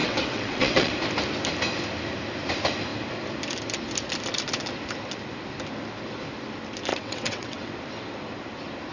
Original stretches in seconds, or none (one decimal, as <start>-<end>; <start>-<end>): 0.9-6.9; 7.7-8.9